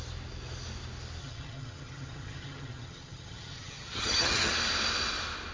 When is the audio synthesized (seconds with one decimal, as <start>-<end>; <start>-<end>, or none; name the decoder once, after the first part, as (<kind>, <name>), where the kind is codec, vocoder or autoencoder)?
1.2-4.5 (vocoder, HiFi-GAN)